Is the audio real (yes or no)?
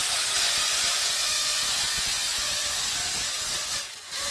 no